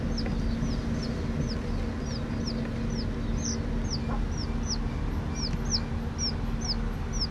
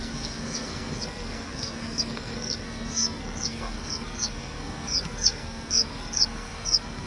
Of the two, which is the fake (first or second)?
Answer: second